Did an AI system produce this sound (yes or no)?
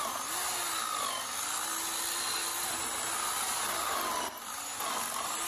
no